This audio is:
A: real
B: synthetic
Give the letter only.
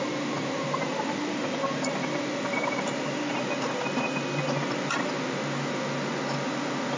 A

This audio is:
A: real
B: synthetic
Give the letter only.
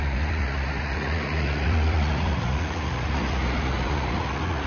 B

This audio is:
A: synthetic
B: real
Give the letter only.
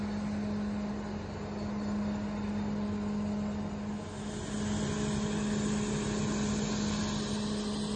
B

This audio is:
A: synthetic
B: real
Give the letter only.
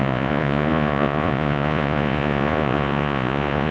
A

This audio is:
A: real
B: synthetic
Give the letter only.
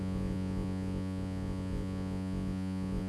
B